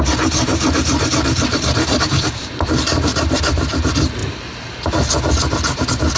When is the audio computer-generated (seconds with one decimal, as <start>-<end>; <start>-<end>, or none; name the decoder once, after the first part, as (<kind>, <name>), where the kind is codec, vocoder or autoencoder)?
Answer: 0.5-3.5 (vocoder, BigVGAN v2); 4.2-5.1